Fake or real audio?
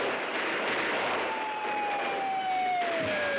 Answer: real